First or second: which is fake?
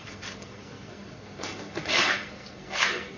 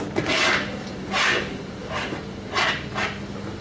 first